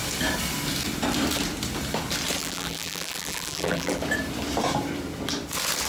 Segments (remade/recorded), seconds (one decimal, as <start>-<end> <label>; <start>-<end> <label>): 0.0-2.4 recorded; 2.4-4.0 remade; 4.0-5.9 recorded